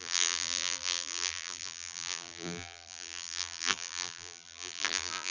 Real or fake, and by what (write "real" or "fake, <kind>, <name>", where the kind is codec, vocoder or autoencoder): fake, vocoder, BigVGAN v2